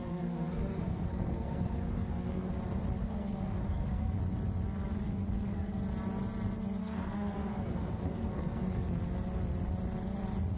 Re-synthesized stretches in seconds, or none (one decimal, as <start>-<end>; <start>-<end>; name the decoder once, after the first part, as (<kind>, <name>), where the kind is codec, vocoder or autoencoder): 0.0-2.5 (codec, SNAC); 3.0-4.2; 5.2-5.8; 6.8-9.0